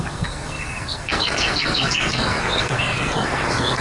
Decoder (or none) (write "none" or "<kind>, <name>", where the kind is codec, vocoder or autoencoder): codec, SNAC